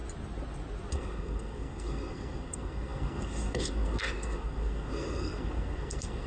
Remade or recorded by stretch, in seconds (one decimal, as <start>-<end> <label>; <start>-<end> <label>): 0.0-0.9 recorded; 0.9-6.3 remade